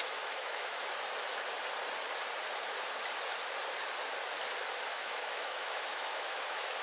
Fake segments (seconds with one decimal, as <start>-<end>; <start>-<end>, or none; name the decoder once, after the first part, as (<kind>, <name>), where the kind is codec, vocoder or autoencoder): 0.0-0.8 (autoencoder, DAC-VAE); 4.9-6.8